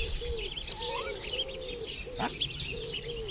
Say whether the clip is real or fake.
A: real